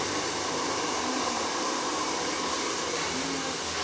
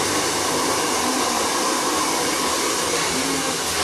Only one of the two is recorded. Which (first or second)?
second